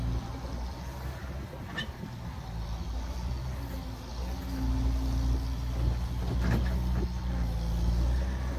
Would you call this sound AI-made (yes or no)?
no